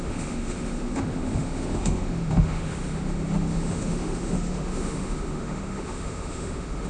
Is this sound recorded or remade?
remade